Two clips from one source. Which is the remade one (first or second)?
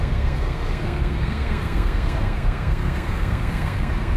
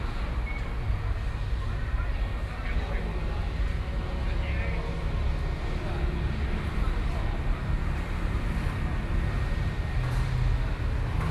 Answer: first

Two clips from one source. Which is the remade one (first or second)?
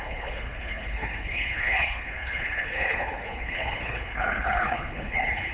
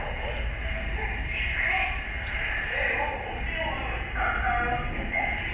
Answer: first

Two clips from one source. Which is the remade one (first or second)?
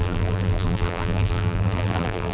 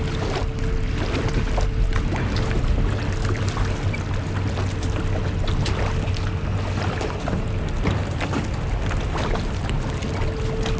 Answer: first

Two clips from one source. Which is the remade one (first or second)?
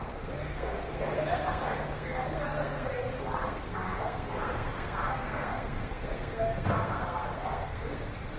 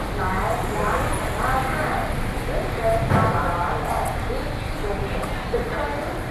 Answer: first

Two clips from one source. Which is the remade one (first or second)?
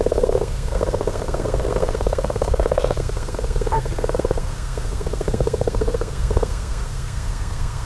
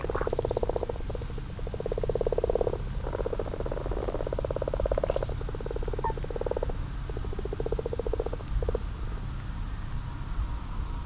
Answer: first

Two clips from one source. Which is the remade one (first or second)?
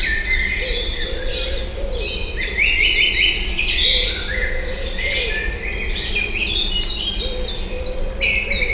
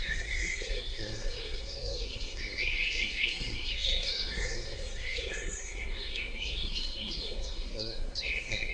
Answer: second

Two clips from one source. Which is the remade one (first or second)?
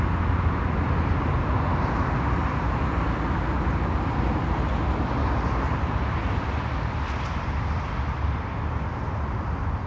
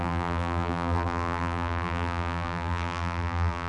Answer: second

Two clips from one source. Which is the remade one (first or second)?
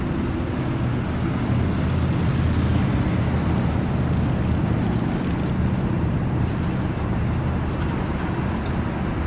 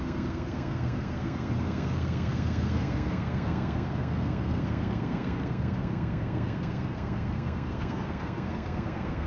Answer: second